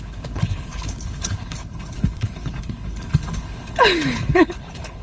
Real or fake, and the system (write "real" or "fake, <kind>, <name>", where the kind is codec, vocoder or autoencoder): fake, codec, HILCodec